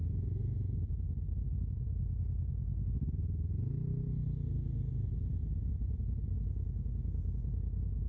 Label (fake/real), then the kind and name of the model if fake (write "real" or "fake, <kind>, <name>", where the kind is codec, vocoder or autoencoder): real